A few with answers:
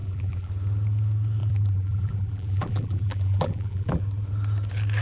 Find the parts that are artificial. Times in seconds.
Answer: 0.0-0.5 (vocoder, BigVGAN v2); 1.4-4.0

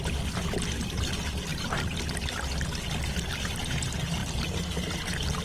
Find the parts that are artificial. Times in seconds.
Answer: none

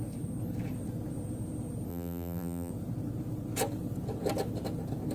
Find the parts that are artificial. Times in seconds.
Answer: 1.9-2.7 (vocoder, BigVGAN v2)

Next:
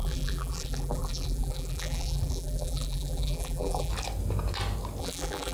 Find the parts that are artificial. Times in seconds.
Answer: 0.0-3.9 (vocoder, BigVGAN v2); 5.0-5.5

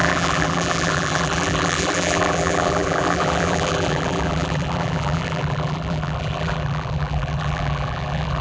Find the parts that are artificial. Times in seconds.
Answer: 0.0-8.4 (vocoder, BigVGAN v2)

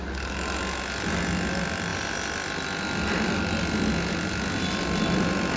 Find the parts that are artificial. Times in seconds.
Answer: none

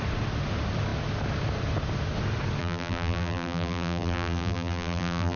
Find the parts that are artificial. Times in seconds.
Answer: 2.6-5.4 (vocoder, BigVGAN v2)

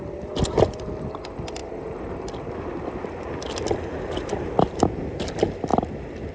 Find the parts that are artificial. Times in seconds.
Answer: 0.0-6.3 (vocoder, BigVGAN v2)